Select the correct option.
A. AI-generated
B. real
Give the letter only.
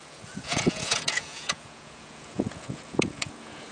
A